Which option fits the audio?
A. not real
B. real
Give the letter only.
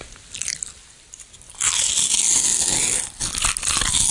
B